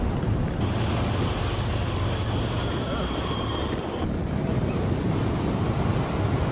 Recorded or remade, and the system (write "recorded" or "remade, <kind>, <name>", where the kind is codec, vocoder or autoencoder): recorded